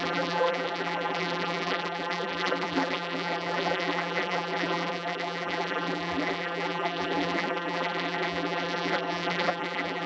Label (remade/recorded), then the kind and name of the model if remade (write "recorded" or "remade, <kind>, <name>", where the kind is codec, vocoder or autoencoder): remade, vocoder, BigVGAN v2